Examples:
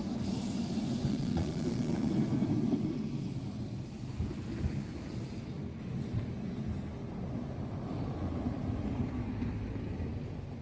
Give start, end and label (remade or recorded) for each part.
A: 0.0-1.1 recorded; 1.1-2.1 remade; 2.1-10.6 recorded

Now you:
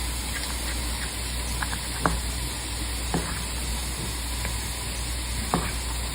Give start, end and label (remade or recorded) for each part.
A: 0.0-6.1 recorded

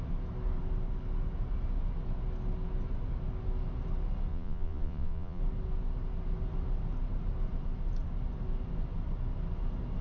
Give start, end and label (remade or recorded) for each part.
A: 0.0-4.3 recorded; 4.3-5.4 remade; 5.4-10.0 recorded

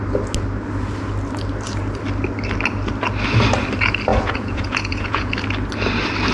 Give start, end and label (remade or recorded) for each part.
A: 0.0-4.1 recorded; 4.1-5.3 remade; 5.3-6.3 recorded

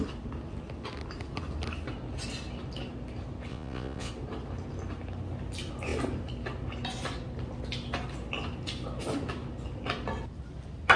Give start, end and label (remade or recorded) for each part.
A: 0.0-3.5 recorded; 3.5-4.1 remade; 4.1-11.0 recorded

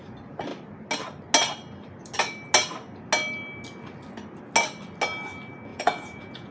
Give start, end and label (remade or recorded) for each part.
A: 0.0-5.7 recorded; 5.7-6.5 remade

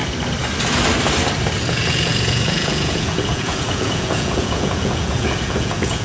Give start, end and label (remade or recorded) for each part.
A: 0.0-1.7 recorded; 1.7-6.0 remade